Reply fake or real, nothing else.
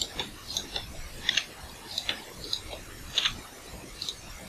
real